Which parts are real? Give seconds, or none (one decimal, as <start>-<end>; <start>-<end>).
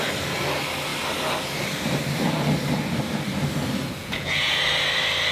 0.0-4.0; 4.6-5.3